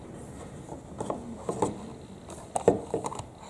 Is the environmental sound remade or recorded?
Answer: recorded